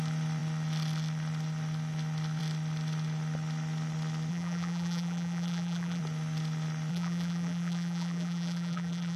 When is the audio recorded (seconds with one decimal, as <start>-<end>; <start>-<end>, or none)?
0.0-4.3; 6.0-6.9